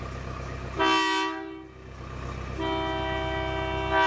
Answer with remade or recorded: recorded